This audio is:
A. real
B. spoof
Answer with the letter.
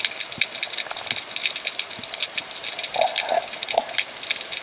A